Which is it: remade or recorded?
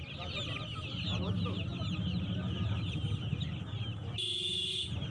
recorded